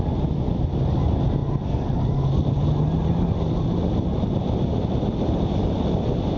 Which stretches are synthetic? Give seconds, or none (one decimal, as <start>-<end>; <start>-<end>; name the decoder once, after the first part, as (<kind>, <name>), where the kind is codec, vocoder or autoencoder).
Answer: none